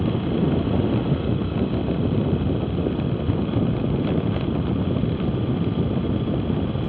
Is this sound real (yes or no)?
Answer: yes